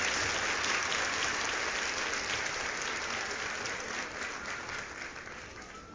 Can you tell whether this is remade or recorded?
recorded